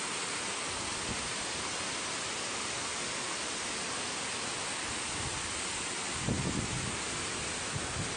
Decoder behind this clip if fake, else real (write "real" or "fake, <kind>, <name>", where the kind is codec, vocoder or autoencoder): real